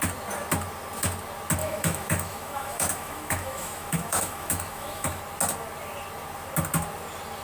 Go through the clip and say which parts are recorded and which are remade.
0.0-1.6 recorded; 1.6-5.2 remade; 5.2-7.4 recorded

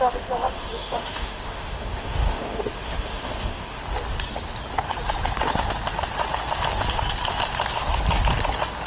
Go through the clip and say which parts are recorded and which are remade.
0.0-3.8 remade; 3.8-8.9 recorded